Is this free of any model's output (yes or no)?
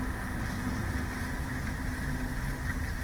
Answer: yes